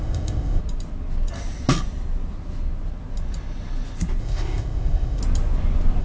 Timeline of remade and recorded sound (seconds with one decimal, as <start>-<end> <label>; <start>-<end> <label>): 0.0-0.6 remade; 0.6-4.2 recorded; 4.2-5.2 remade; 5.2-6.0 recorded

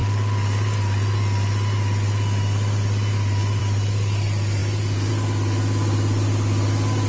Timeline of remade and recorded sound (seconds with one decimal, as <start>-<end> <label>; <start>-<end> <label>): 0.0-7.1 recorded

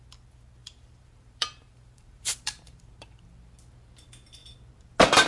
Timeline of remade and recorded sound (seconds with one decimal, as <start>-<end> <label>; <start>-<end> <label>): 0.0-0.6 recorded; 0.6-3.2 remade; 3.2-5.3 recorded

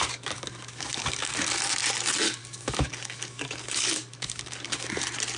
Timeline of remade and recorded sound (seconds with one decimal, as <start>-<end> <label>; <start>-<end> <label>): 0.0-1.5 remade; 1.5-2.4 recorded; 2.4-5.0 remade; 5.0-5.4 recorded

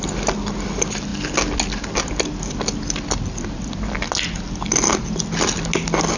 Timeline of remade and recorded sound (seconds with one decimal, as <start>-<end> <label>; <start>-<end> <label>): 0.0-6.2 recorded

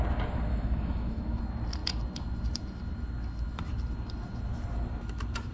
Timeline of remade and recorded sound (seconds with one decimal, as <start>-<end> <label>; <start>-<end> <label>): 0.0-0.5 recorded; 0.5-1.4 remade; 1.4-5.5 recorded